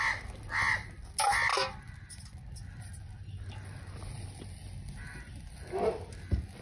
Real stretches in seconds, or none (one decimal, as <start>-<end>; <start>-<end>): 0.0-6.6